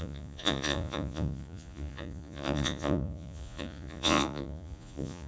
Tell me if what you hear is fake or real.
fake